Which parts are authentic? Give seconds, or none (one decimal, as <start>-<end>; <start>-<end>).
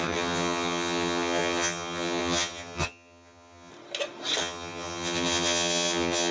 3.7-4.4